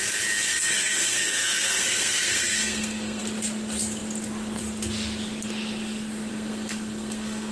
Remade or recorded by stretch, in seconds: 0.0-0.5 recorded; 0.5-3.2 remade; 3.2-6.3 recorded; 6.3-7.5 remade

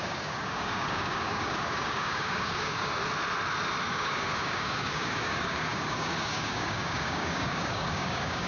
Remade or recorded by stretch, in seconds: 0.0-3.0 remade; 3.0-3.9 recorded; 3.9-8.5 remade

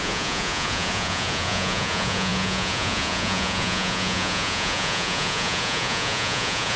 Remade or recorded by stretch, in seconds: 0.0-6.8 remade